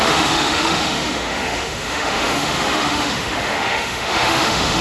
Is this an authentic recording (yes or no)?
no